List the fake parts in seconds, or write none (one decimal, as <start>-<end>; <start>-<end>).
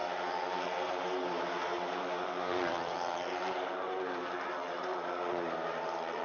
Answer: 0.0-6.2